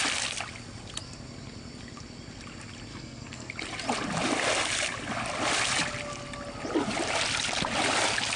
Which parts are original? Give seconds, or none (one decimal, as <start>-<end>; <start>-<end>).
0.0-2.9; 3.5-8.4